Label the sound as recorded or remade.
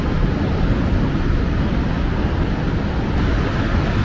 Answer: recorded